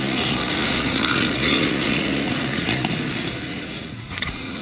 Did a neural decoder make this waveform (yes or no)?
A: yes